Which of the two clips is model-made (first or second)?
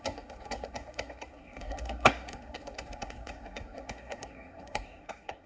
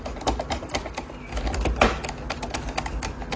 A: first